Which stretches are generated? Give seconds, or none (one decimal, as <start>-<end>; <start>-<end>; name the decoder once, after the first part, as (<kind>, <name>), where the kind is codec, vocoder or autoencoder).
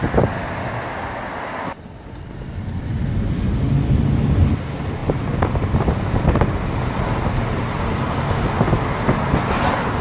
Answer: none